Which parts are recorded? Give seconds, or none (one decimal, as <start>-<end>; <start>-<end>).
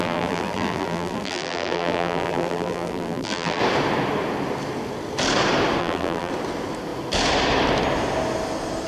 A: 3.6-5.8; 6.3-8.9